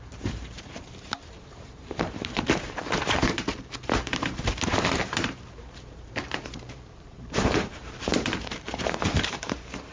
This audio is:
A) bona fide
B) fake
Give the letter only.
B